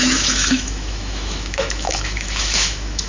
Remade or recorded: remade